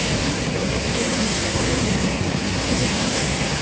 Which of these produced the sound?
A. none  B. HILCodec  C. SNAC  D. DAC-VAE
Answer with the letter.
C